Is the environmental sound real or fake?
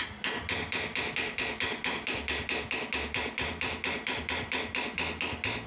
real